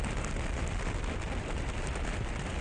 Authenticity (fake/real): real